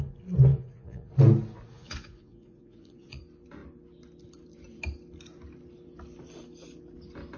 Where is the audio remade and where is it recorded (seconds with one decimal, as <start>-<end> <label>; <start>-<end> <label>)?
0.0-0.5 recorded; 0.5-1.1 remade; 1.1-1.7 recorded; 1.7-3.2 remade; 3.2-7.4 recorded